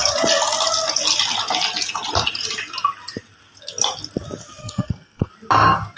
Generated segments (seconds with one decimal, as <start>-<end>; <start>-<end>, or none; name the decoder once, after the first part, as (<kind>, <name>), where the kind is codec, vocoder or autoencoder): 4.6-5.3 (codec, SNAC)